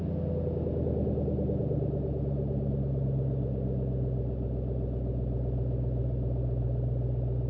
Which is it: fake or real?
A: real